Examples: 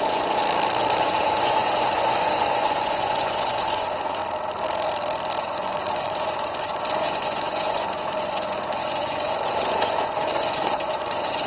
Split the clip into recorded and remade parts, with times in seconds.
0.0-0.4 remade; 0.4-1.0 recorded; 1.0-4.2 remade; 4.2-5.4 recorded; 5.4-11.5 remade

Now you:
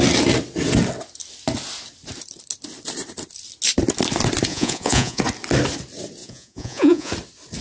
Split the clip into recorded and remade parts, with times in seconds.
0.0-4.5 recorded; 4.5-5.2 remade; 5.2-6.2 recorded; 6.2-7.1 remade; 7.1-7.6 recorded

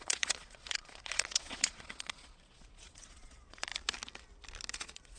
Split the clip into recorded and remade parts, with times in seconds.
0.0-3.7 remade; 3.7-4.8 recorded; 4.8-5.2 remade

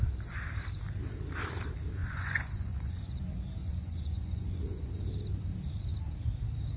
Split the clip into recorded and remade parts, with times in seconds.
0.0-2.0 recorded; 2.0-3.2 remade; 3.2-3.6 recorded; 3.6-4.9 remade; 4.9-6.8 recorded

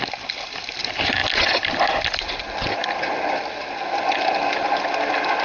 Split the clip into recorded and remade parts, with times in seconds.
0.0-5.4 recorded

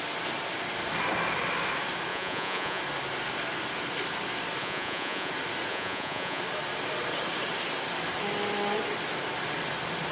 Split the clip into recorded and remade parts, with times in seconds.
0.0-2.1 recorded; 2.1-2.8 remade; 2.8-4.6 recorded; 4.6-5.3 remade; 5.3-5.7 recorded; 5.7-6.4 remade; 6.4-10.1 recorded

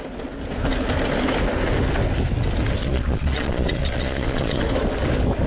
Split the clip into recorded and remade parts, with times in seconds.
0.0-2.8 recorded; 2.8-4.6 remade; 4.6-5.5 recorded